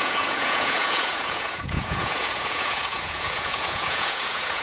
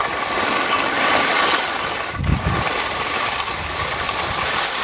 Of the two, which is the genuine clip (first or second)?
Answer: second